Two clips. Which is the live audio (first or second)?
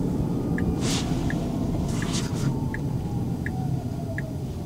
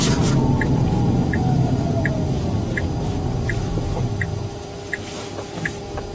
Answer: second